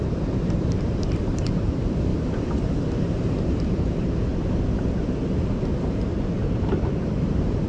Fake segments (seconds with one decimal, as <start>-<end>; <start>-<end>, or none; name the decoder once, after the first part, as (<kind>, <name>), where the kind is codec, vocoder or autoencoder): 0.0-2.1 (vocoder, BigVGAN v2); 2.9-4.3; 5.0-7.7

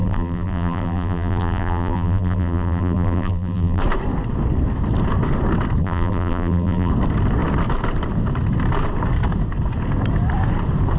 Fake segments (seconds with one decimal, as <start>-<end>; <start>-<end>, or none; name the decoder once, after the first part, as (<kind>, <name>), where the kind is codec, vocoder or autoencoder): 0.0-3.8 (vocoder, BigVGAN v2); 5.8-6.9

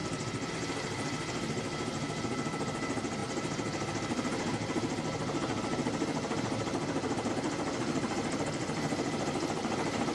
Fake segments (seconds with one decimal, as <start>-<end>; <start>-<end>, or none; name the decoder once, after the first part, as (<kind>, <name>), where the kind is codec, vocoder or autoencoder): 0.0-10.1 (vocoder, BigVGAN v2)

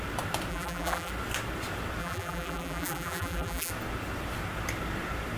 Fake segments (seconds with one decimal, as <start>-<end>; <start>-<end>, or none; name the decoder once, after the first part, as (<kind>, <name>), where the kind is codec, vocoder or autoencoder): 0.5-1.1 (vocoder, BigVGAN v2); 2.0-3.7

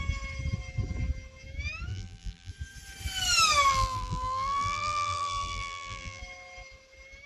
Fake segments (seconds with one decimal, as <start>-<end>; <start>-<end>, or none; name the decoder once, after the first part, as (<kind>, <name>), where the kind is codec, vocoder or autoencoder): 1.9-2.5 (vocoder, BigVGAN v2); 3.7-6.2